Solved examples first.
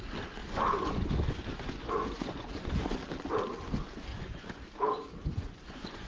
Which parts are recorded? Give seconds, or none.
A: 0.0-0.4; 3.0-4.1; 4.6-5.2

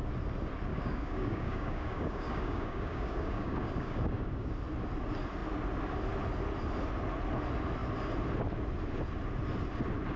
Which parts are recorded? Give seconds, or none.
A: 0.0-0.7; 4.5-10.2

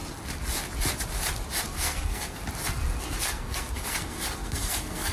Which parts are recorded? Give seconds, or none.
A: 0.0-1.6; 2.4-3.0